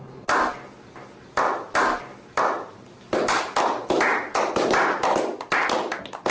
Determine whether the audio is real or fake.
real